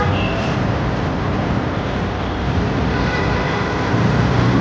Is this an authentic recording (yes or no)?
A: no